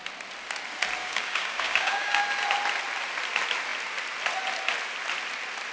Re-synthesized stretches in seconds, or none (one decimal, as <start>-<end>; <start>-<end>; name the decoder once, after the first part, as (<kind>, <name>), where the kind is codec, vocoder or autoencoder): 1.0-2.2 (codec, DAC)